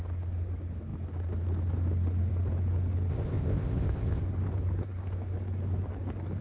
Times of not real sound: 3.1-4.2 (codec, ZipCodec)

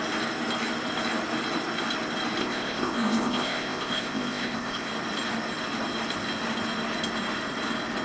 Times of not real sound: 2.4-4.9 (codec, ZipCodec)

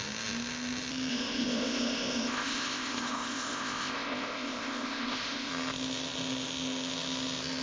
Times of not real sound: 1.1-5.5 (codec, ZipCodec)